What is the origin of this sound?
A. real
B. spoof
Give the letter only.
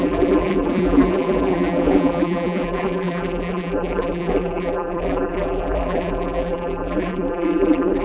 B